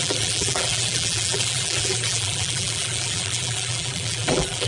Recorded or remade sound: remade